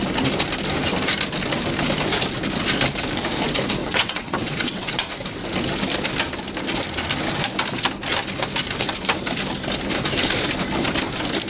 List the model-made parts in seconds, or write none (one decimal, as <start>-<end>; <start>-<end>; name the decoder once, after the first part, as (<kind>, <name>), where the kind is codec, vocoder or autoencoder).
3.8-4.9 (vocoder, WaveNeXt)